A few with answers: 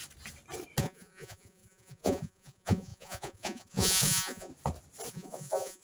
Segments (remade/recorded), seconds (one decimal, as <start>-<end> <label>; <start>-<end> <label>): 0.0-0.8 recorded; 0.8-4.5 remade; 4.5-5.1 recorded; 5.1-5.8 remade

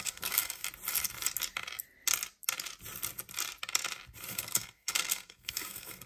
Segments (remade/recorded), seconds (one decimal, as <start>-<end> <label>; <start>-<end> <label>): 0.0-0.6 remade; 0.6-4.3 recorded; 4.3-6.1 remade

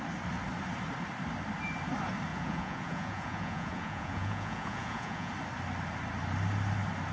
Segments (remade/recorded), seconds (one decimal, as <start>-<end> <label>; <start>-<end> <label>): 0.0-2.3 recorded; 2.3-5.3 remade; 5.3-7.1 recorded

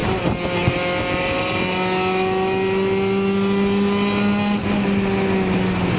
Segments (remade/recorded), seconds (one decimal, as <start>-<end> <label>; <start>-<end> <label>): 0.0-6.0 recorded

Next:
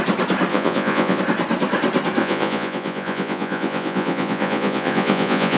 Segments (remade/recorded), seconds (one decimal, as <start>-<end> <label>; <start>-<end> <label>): 0.0-0.5 recorded; 0.5-1.2 remade; 1.2-2.2 recorded; 2.2-5.6 remade